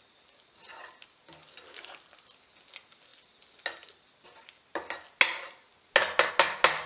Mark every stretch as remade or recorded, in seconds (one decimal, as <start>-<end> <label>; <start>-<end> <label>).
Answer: 0.0-6.9 recorded

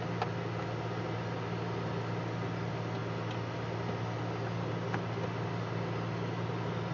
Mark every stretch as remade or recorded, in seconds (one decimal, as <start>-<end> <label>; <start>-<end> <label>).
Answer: 0.0-6.9 recorded